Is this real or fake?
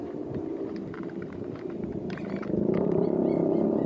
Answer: real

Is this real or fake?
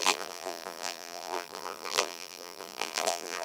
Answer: fake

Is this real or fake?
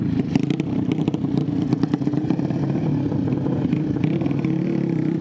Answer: fake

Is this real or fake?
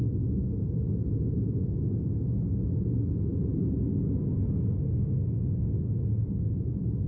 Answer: real